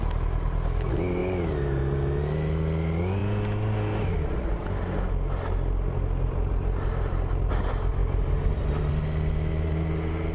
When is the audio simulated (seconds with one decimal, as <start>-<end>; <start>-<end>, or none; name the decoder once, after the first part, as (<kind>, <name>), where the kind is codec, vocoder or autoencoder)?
8.0-8.9 (vocoder, BigVGAN v2)